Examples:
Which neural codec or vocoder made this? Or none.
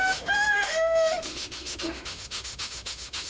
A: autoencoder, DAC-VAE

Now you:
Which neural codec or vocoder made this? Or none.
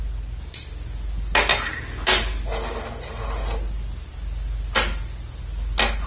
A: none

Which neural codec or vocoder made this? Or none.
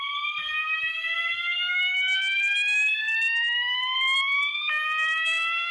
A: none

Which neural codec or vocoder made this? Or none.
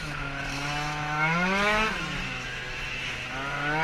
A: autoencoder, DAC-VAE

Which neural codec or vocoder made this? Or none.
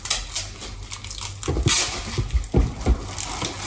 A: none